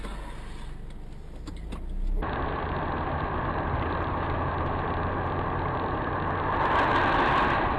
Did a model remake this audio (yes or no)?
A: no